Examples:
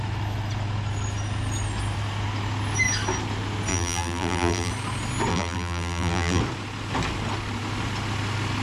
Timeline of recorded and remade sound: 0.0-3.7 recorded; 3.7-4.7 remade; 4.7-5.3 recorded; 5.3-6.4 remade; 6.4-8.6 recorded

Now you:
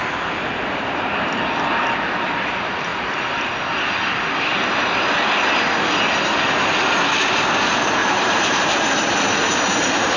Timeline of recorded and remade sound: 0.0-2.9 remade; 2.9-7.6 recorded; 7.6-10.2 remade

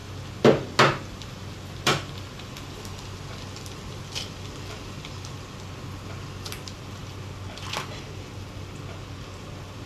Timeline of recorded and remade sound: 0.0-7.0 recorded; 7.0-8.3 remade; 8.3-9.9 recorded